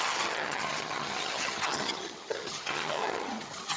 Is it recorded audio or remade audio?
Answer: remade